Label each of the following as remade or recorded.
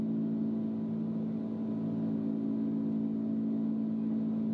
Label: recorded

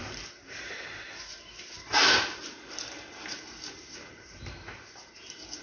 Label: remade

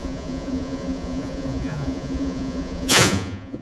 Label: remade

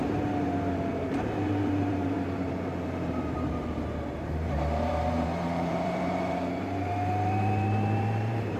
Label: remade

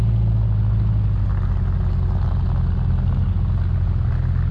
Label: recorded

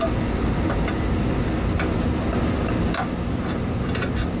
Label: recorded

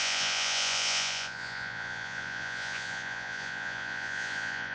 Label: remade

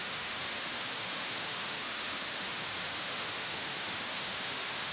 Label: remade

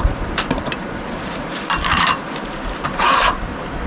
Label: remade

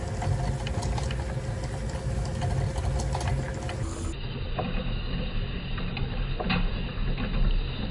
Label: recorded